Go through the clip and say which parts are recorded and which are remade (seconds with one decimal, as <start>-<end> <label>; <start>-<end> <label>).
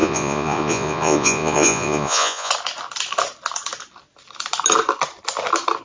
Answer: 0.0-2.5 remade; 2.5-5.8 recorded